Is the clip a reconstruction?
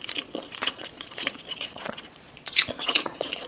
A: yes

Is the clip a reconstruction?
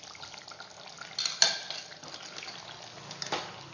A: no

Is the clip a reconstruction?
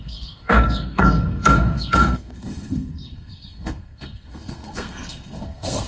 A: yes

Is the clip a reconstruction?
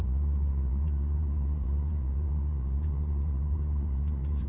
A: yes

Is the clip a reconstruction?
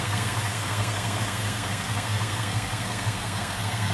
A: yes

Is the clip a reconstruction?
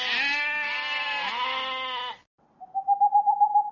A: no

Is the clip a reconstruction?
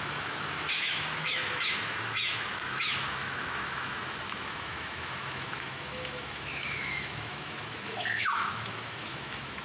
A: yes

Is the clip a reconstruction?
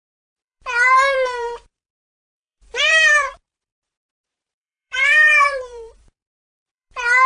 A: yes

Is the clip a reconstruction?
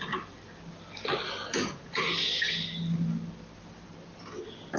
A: no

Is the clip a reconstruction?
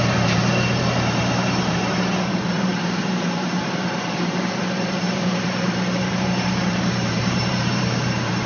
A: yes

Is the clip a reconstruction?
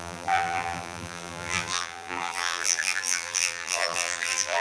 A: yes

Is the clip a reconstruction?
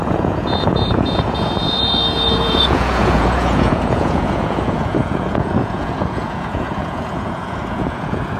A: yes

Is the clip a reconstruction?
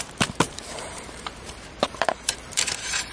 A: yes